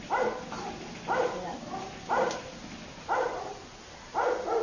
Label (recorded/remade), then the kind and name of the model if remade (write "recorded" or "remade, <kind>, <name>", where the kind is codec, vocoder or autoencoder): recorded